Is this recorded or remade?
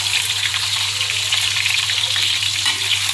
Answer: remade